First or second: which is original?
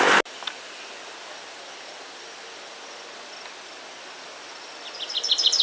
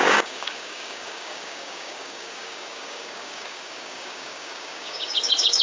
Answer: first